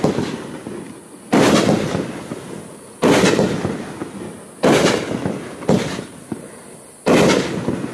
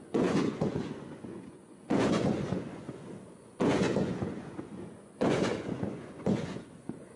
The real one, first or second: first